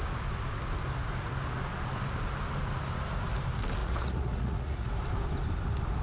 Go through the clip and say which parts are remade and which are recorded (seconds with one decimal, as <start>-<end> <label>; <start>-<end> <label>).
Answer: 0.0-3.8 recorded; 3.8-4.9 remade; 4.9-6.0 recorded